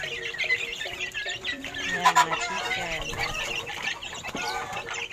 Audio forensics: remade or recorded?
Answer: remade